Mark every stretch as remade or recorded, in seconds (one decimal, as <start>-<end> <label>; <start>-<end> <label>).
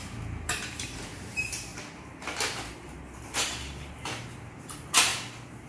0.0-1.7 remade; 1.7-4.2 recorded; 4.2-5.1 remade; 5.1-5.7 recorded